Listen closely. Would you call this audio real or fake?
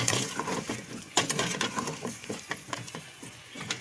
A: fake